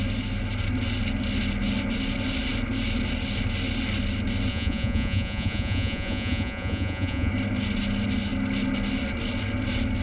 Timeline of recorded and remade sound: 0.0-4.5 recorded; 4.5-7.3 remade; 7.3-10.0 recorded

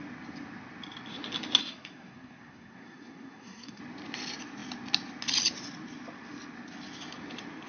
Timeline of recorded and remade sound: 0.0-1.6 recorded; 1.6-3.8 remade; 3.8-7.7 recorded